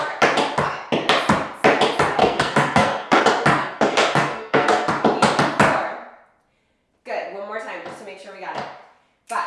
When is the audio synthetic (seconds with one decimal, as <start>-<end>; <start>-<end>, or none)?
2.2-3.2; 3.6-4.9